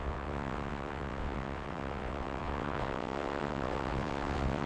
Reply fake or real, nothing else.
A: fake